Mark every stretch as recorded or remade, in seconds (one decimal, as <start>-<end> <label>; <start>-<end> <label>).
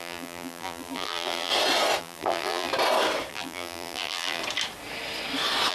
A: 0.0-1.5 remade; 1.5-2.0 recorded; 2.0-2.7 remade; 2.7-3.3 recorded; 3.3-4.4 remade; 4.4-5.7 recorded